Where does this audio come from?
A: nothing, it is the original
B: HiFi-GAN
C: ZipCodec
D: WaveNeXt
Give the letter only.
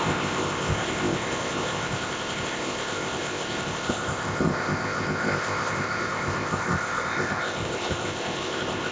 C